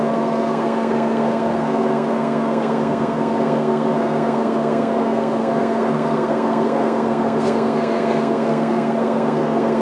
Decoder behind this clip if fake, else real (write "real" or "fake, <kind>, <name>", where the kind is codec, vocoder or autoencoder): fake, codec, SNAC